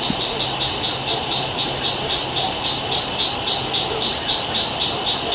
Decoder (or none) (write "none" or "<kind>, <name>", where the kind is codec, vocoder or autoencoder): none